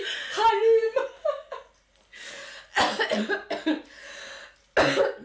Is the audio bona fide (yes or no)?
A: yes